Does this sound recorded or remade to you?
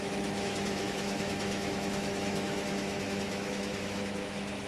remade